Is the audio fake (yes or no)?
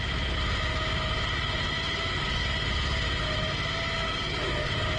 no